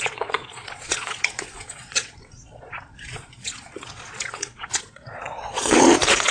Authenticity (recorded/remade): remade